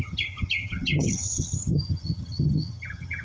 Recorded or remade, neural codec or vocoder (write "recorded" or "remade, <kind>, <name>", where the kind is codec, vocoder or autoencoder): remade, vocoder, HiFi-GAN